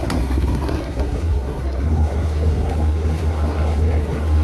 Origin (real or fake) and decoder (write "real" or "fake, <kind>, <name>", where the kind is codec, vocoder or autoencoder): fake, codec, SNAC